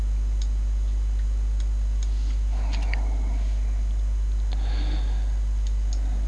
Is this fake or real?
real